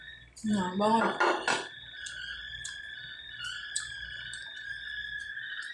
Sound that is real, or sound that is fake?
real